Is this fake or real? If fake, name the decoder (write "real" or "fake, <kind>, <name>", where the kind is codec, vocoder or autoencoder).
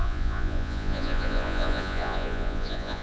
fake, vocoder, Vocos